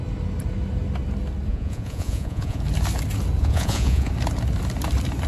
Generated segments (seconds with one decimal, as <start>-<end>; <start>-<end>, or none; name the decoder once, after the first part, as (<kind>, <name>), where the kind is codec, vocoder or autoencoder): 1.5-2.6 (vocoder, Vocos); 3.4-4.1